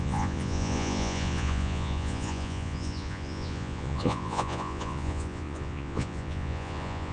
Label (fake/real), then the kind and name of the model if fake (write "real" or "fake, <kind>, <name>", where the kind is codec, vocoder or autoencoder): fake, vocoder, Vocos